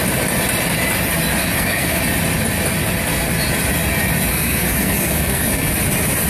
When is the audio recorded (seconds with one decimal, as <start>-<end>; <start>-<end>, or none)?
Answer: 0.0-1.4; 2.0-4.3; 5.7-6.3